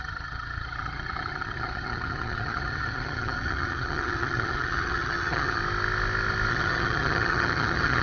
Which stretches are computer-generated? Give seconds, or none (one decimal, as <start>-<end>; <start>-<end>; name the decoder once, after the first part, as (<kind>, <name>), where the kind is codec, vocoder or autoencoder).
0.0-5.6 (vocoder, HiFi-GAN); 6.5-8.0